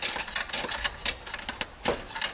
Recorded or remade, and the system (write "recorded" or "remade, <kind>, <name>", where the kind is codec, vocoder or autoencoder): recorded